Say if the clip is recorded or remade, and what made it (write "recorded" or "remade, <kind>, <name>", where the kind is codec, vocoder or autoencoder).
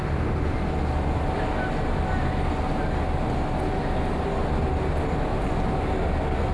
recorded